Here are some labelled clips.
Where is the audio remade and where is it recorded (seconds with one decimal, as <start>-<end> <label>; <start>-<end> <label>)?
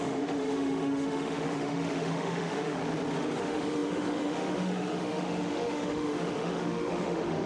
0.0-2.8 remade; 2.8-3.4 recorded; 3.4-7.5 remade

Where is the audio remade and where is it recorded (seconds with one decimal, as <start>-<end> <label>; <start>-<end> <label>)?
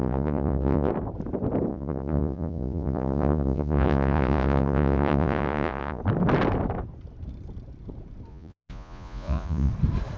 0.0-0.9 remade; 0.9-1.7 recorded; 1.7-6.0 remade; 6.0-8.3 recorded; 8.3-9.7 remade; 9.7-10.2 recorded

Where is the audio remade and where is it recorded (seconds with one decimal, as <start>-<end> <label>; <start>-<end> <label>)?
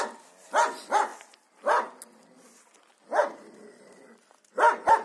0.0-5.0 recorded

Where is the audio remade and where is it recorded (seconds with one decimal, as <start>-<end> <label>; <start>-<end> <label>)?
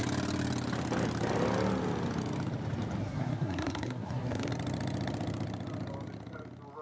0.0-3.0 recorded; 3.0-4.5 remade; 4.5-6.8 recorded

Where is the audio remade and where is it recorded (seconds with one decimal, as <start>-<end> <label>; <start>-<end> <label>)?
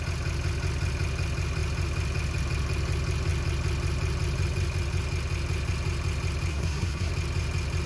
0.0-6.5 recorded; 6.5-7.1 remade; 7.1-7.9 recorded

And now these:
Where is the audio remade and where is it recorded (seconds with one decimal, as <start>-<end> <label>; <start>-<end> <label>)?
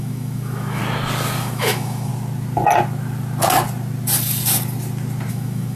0.0-0.8 remade; 0.8-1.4 recorded; 1.4-2.1 remade; 2.1-5.3 recorded; 5.3-5.8 remade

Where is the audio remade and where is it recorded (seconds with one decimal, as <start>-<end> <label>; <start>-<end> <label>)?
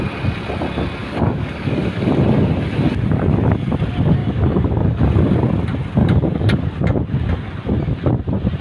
0.0-1.0 recorded; 1.0-2.1 remade; 2.1-4.2 recorded; 4.2-5.0 remade; 5.0-6.0 recorded; 6.0-6.6 remade; 6.6-8.6 recorded